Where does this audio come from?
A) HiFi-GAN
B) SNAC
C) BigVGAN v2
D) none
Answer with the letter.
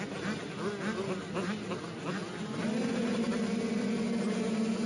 D